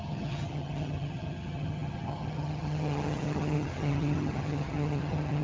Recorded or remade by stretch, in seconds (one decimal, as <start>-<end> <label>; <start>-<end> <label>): 0.0-5.4 remade